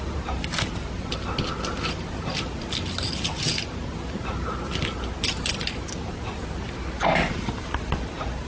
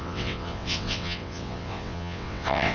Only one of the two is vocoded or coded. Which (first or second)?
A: second